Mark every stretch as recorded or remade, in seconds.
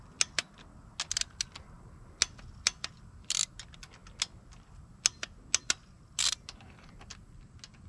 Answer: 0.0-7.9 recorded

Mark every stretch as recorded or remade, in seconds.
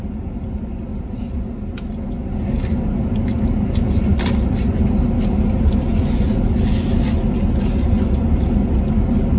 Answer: 0.0-9.4 recorded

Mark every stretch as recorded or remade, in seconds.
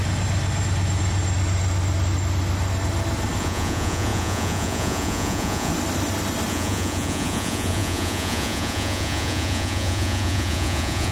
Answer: 0.0-3.4 recorded; 3.4-5.7 remade; 5.7-6.5 recorded; 6.5-11.1 remade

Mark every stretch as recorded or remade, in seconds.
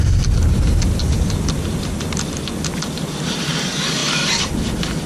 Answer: 0.0-4.0 recorded; 4.0-4.5 remade; 4.5-5.1 recorded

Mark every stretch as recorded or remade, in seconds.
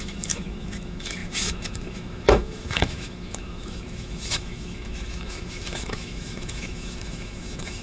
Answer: 0.0-7.8 remade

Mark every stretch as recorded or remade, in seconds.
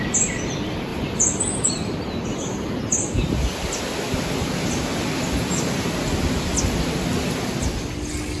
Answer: 0.0-8.4 recorded